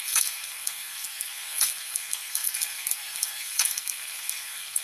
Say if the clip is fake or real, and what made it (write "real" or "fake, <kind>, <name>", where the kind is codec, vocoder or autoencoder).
fake, codec, SNAC